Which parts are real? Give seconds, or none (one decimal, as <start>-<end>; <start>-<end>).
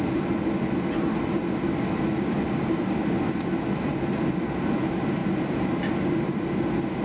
0.0-7.0